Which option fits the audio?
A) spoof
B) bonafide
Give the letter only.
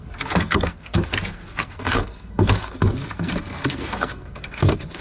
A